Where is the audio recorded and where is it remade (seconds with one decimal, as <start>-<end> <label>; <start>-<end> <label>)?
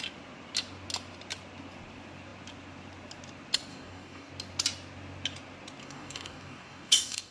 0.0-3.7 recorded; 3.7-4.3 remade; 4.3-5.8 recorded; 5.8-7.3 remade